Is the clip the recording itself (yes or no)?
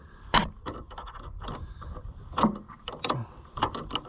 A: yes